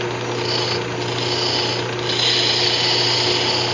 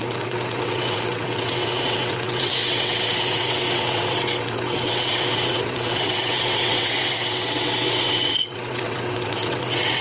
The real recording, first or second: first